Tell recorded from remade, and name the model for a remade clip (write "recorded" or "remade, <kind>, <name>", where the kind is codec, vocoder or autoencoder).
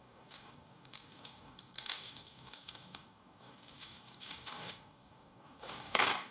remade, codec, DAC